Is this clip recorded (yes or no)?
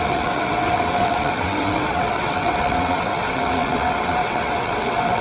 no